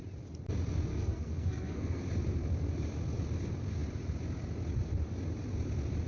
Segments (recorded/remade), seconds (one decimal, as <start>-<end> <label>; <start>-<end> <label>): 0.0-0.9 recorded; 0.9-2.0 remade; 2.0-6.1 recorded

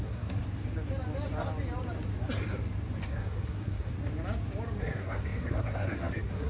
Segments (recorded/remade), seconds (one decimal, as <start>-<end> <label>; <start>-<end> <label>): 0.0-0.4 remade; 0.4-3.0 recorded; 3.0-3.9 remade; 3.9-4.8 recorded; 4.8-6.5 remade

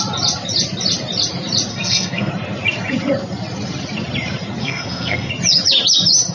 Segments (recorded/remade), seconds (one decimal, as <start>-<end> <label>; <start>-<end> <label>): 0.0-1.7 recorded; 1.7-2.3 remade; 2.3-4.6 recorded; 4.6-5.3 remade; 5.3-6.3 recorded